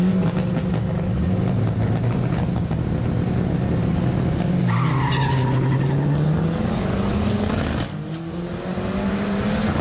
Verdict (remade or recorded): recorded